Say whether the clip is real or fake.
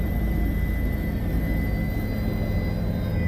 real